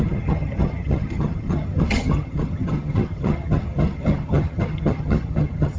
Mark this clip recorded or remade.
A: remade